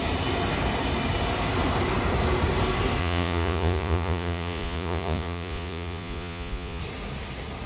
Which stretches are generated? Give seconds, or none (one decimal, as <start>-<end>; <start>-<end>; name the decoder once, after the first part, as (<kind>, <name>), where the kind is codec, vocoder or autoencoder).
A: 3.0-6.8 (vocoder, Vocos)